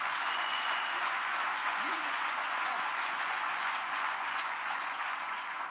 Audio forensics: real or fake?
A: fake